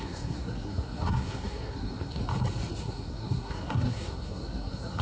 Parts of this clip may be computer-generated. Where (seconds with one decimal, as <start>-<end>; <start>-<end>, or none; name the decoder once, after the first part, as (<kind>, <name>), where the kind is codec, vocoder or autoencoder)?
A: 0.0-2.2 (codec, SNAC); 2.8-5.0